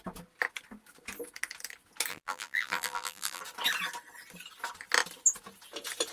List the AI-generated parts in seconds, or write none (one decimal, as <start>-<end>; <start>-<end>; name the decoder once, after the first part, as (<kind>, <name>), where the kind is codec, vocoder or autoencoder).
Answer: 2.1-3.4 (vocoder, BigVGAN v2)